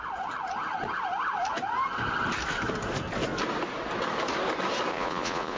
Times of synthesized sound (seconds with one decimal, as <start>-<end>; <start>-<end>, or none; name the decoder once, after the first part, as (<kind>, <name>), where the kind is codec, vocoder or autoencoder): 4.9-5.6 (vocoder, Vocos)